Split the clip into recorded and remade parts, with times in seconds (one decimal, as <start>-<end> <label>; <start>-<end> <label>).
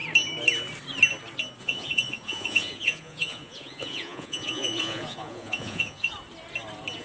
0.0-1.6 recorded; 1.6-6.1 remade; 6.1-7.0 recorded